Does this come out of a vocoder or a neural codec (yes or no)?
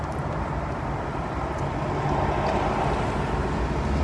no